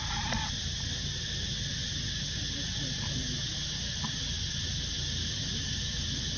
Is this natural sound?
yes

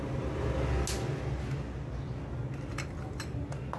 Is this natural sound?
yes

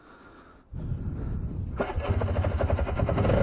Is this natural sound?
yes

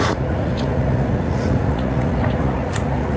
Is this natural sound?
no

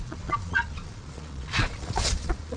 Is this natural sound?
no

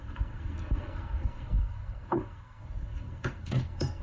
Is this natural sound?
no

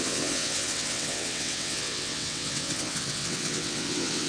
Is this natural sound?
no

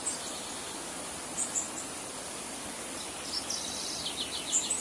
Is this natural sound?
yes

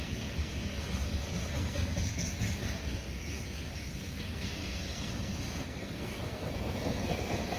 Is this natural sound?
no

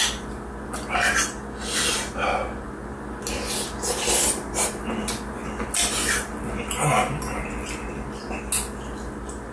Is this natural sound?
yes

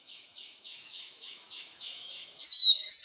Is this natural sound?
no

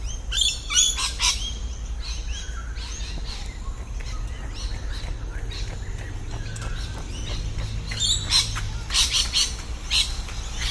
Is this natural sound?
yes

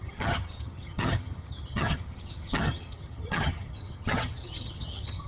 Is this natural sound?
no